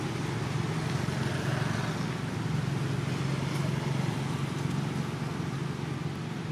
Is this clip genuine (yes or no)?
yes